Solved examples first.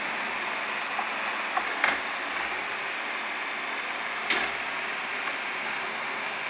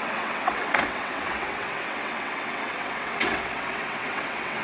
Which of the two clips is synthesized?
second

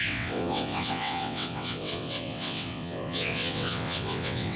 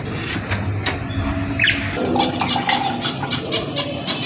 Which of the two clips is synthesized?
first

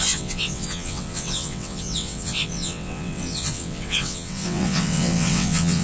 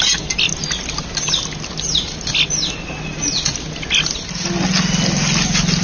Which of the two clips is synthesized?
first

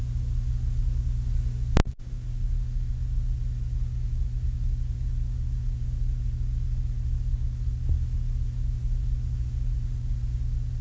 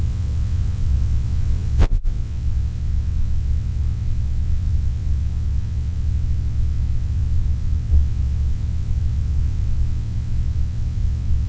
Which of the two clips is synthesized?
second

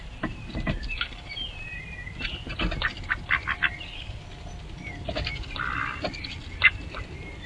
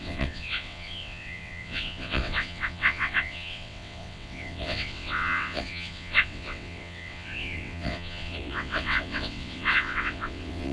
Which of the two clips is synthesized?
second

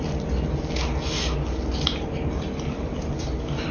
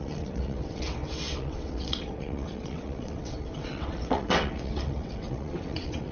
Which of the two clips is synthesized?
second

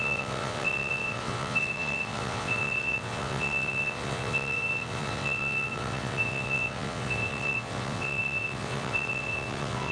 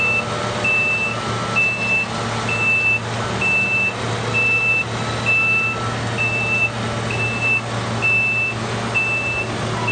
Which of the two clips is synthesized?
first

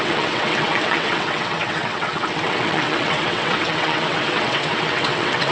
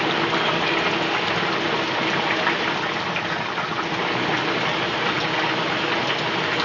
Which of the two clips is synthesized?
first